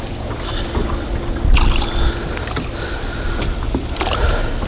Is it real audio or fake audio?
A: real